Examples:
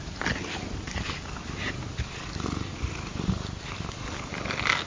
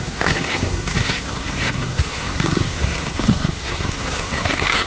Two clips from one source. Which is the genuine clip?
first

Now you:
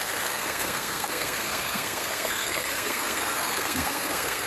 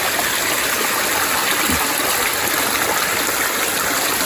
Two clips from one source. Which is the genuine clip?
second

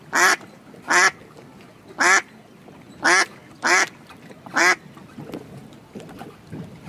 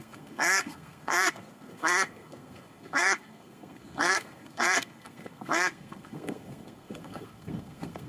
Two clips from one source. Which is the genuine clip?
first